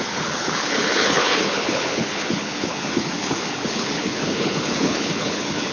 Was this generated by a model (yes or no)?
yes